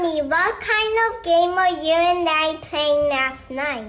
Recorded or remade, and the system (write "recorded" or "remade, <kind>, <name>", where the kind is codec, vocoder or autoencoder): recorded